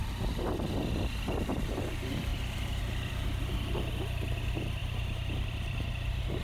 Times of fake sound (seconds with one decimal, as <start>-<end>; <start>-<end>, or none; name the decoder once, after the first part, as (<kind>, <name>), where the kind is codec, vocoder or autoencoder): 4.8-5.8 (vocoder, BigVGAN v2)